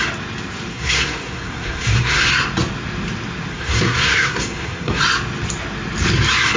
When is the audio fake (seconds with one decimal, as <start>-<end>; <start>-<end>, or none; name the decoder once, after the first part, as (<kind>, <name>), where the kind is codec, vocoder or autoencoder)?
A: 0.7-2.3 (codec, SNAC); 3.5-5.0